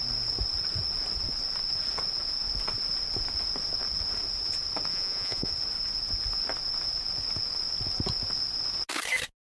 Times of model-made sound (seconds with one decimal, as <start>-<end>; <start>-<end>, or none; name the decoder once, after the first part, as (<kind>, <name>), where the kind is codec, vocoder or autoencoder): 4.9-5.5 (vocoder, Vocos)